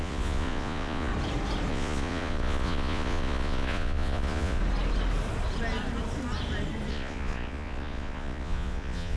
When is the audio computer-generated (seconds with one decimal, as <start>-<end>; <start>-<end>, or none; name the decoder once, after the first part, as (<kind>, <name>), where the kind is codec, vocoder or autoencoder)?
0.0-1.1 (vocoder, Vocos); 1.7-4.6; 6.9-9.2